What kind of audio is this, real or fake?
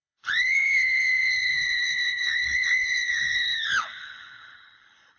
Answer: fake